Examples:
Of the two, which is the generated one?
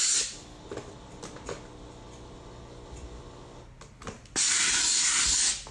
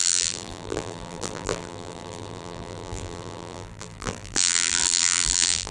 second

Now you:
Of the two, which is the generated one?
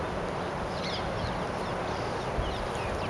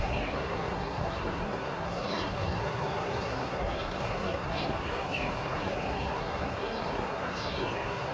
second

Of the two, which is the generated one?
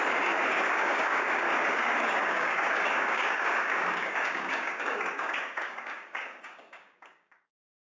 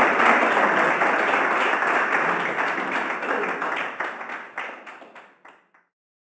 first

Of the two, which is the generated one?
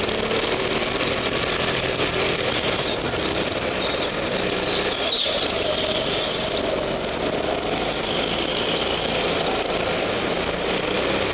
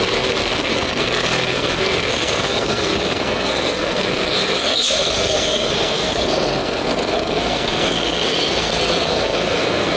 second